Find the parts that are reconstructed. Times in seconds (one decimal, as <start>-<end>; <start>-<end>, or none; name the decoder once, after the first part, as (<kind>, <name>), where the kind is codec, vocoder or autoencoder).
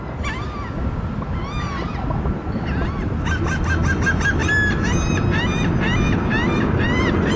none